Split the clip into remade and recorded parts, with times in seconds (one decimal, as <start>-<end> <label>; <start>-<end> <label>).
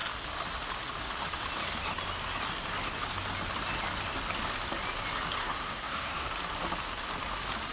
0.0-5.4 recorded; 5.4-6.3 remade; 6.3-7.7 recorded